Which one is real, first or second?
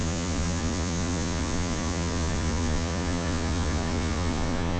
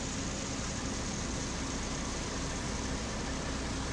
second